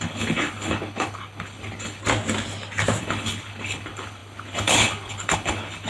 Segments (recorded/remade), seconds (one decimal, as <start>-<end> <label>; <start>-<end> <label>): 0.0-2.0 remade; 2.0-3.0 recorded; 3.0-5.9 remade